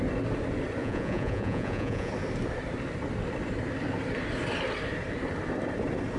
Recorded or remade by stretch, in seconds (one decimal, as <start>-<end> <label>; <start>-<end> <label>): 0.0-0.8 recorded; 0.8-2.1 remade; 2.1-6.2 recorded